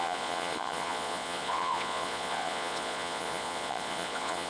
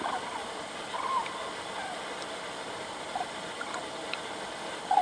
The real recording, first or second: second